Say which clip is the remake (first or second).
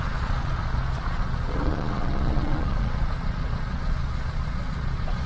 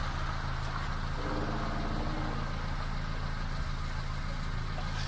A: first